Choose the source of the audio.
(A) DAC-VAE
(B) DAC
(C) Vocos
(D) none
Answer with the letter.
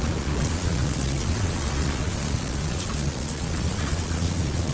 C